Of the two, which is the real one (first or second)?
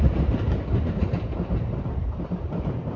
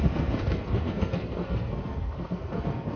first